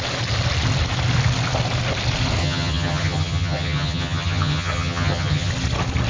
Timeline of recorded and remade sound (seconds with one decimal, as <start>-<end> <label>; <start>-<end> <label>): 0.0-2.4 recorded; 2.4-5.5 remade; 5.5-6.1 recorded